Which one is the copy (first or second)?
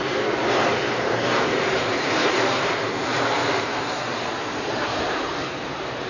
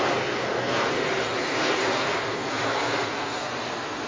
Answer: first